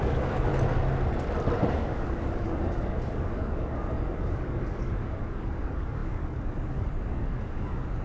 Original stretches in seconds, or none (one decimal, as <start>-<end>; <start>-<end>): 0.5-1.7